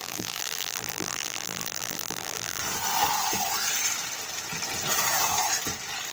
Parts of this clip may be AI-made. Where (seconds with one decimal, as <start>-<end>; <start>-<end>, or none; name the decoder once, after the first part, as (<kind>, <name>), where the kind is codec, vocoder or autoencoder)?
0.0-2.6 (vocoder, BigVGAN v2)